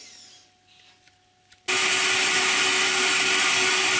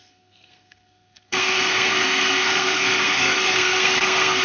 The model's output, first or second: second